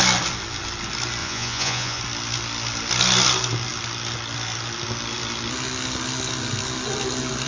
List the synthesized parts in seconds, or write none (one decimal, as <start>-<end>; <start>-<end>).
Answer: 1.2-2.0